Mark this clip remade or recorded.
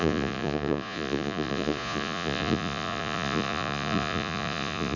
remade